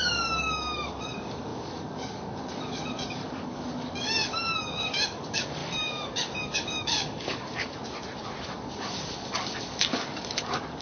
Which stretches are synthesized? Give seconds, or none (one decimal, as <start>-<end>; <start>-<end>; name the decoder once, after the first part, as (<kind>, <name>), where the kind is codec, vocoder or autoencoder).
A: 0.0-7.8 (codec, DAC); 8.4-10.8